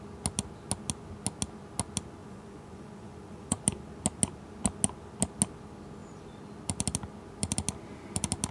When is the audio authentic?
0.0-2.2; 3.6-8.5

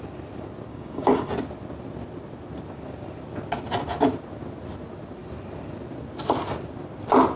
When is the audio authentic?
0.0-0.7; 1.3-7.4

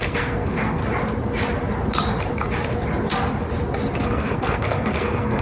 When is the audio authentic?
0.8-4.0

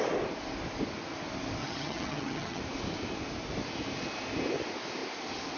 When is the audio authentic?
0.0-1.6; 2.6-5.6

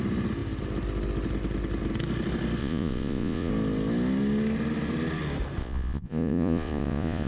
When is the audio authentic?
0.0-2.6; 3.5-5.6